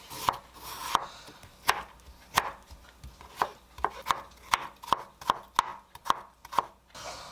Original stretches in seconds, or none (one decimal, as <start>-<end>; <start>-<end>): 0.0-7.3